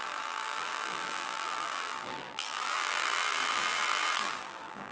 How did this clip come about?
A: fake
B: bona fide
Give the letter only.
A